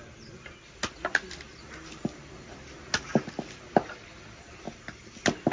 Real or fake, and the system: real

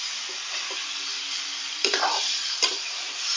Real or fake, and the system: fake, vocoder, BigVGAN v2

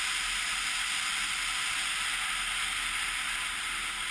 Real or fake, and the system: real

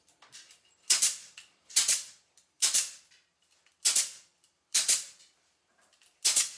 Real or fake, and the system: fake, vocoder, BigVGAN v2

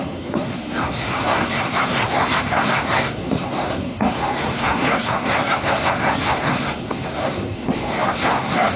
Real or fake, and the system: fake, codec, SNAC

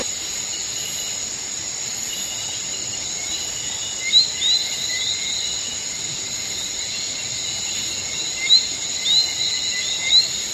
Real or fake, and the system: real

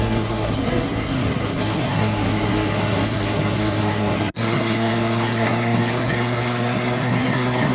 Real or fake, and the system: fake, codec, SNAC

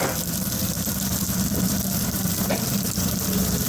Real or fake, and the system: fake, vocoder, BigVGAN v2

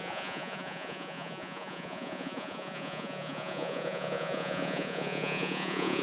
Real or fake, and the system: fake, vocoder, Vocos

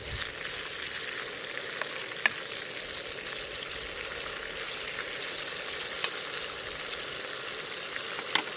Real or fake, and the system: real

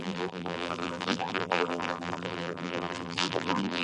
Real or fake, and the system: fake, vocoder, BigVGAN v2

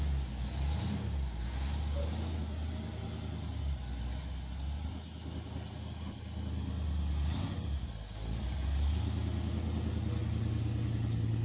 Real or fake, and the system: real